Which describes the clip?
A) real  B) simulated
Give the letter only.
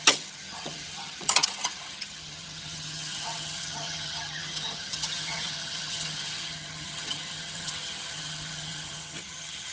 B